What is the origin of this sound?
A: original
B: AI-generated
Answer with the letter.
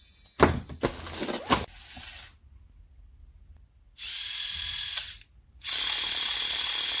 A